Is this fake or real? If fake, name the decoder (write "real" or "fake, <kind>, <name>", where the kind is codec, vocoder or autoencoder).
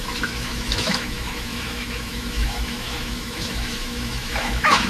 fake, autoencoder, DAC-VAE